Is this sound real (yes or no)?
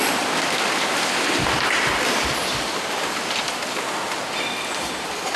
yes